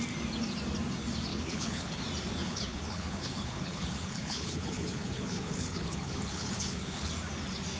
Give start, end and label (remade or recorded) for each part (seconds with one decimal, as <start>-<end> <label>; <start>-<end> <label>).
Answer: 0.0-1.3 recorded; 1.3-2.0 remade; 2.0-2.4 recorded; 2.4-7.1 remade; 7.1-7.8 recorded